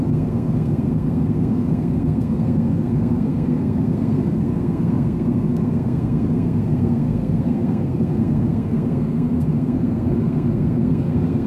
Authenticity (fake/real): fake